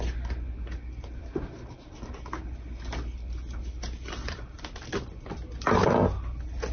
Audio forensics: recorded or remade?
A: recorded